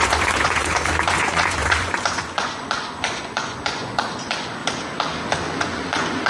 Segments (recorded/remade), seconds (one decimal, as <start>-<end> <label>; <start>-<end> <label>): 0.0-4.6 remade; 4.6-5.6 recorded; 5.6-6.3 remade